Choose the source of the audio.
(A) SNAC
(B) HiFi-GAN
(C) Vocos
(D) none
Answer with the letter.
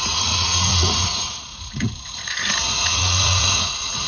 C